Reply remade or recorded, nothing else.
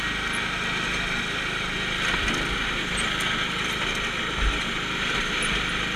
recorded